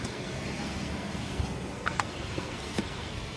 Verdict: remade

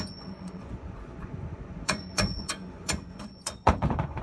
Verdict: remade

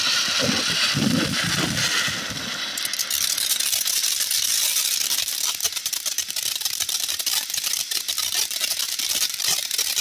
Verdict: remade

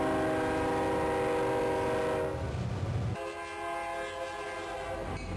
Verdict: recorded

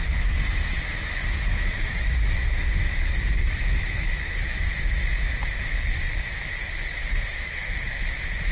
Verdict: remade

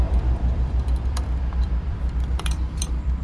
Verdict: remade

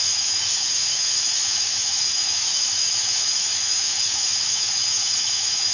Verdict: remade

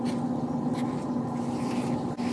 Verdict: recorded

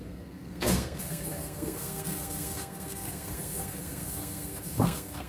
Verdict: remade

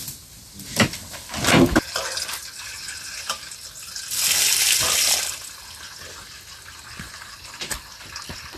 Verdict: recorded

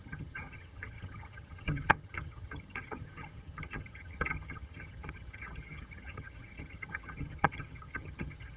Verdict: remade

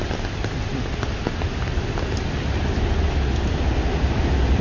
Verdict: recorded